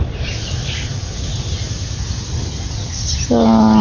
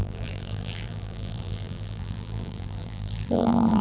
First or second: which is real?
first